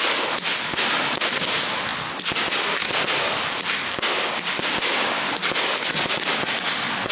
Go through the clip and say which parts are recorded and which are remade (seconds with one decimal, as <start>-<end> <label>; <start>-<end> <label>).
0.0-7.1 recorded